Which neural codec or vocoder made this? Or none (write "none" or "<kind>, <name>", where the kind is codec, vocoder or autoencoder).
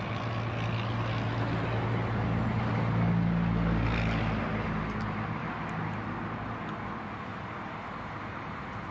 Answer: none